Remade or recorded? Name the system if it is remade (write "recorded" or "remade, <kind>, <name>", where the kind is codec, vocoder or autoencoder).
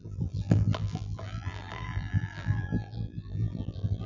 remade, vocoder, BigVGAN v2